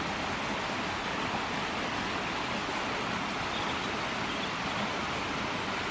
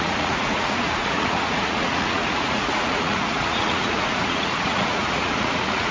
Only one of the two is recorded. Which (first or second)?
first